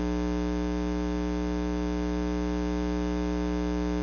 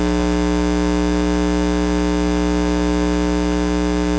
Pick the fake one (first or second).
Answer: first